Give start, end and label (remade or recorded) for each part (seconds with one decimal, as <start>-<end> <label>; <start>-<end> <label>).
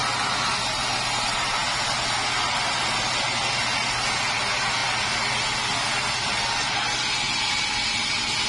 0.0-8.5 recorded